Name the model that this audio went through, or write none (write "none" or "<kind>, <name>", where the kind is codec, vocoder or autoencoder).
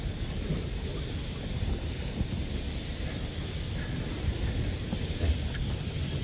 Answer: none